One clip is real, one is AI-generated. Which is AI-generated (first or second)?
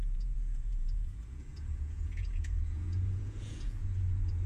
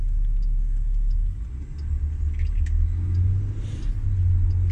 first